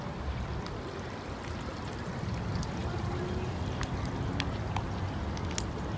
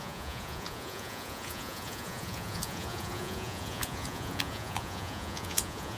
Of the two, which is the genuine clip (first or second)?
first